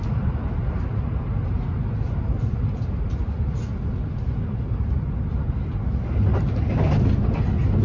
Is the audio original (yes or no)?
yes